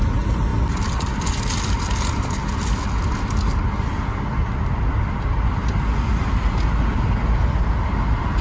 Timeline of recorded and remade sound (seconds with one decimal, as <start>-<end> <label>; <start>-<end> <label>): 0.0-8.4 recorded